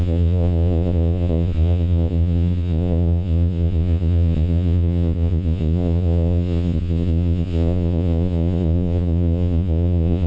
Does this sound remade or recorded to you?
remade